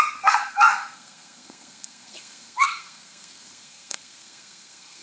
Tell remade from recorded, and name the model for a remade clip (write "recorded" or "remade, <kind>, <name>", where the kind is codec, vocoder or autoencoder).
remade, codec, SNAC